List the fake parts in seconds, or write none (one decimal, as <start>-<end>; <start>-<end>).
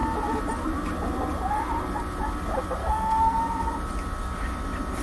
2.8-3.4